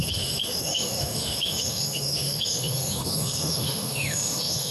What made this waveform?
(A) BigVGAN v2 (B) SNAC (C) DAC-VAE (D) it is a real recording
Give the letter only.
C